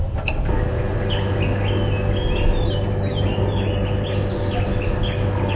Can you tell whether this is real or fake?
real